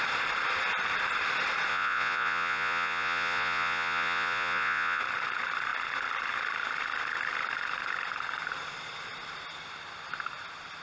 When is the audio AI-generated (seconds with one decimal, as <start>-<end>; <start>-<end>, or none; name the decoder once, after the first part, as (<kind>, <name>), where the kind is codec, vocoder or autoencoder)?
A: 1.7-5.0 (vocoder, Vocos)